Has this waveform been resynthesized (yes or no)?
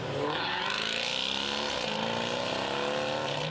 no